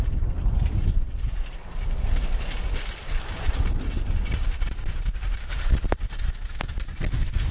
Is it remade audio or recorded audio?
recorded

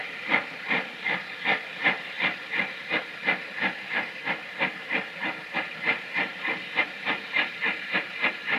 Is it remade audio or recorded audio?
recorded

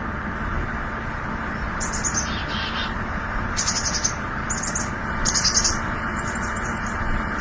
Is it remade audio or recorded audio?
recorded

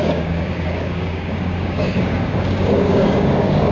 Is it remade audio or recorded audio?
remade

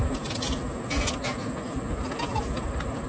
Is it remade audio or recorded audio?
recorded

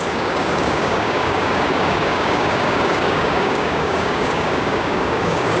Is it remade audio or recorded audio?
remade